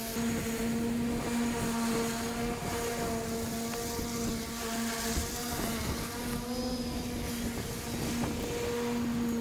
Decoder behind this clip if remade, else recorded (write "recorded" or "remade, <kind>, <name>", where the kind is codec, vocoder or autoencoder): recorded